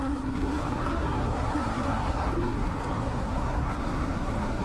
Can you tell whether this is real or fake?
fake